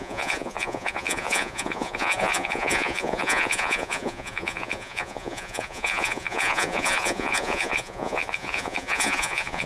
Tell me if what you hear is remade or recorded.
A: remade